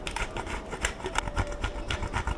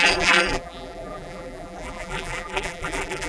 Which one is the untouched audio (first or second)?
first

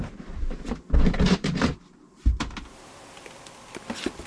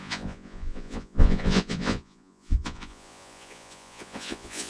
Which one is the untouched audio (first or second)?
first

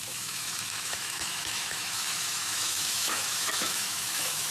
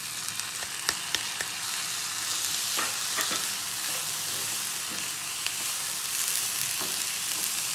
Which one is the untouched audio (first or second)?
second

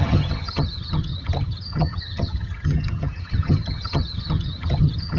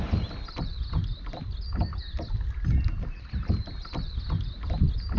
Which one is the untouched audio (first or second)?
second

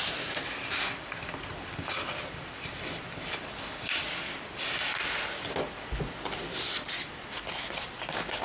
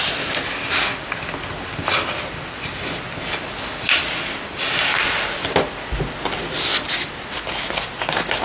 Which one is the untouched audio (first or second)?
second